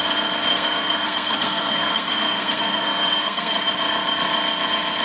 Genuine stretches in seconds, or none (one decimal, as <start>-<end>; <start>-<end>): 0.0-0.5; 3.5-5.0